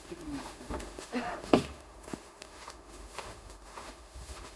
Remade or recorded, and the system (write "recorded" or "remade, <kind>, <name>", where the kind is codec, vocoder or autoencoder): remade, autoencoder, DAC-VAE